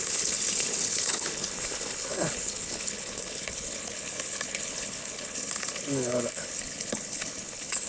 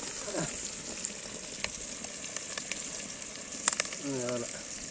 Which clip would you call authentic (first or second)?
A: second